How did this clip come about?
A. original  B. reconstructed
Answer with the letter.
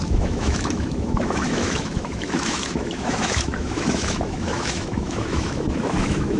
B